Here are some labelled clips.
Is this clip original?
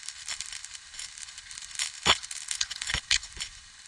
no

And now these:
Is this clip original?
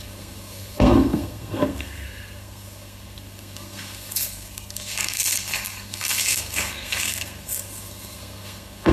no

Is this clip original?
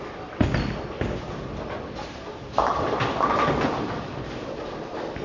yes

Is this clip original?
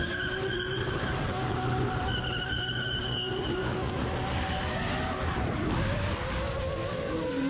yes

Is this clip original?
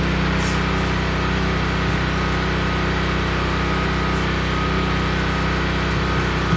yes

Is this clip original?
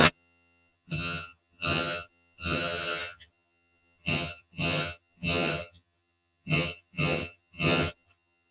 no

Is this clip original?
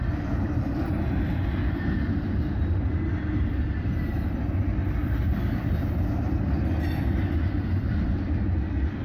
yes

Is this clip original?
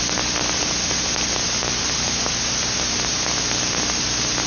yes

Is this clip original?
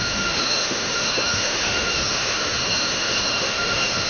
no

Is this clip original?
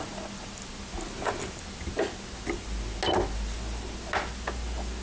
yes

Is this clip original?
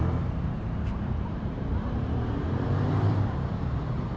no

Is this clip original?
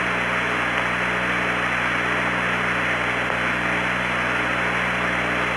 yes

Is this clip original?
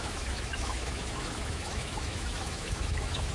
no